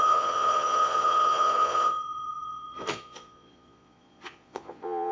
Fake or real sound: fake